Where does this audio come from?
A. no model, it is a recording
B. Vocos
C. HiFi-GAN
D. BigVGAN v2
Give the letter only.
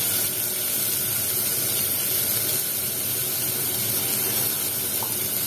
A